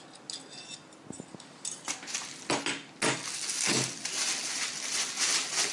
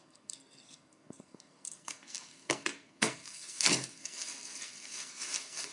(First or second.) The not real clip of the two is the second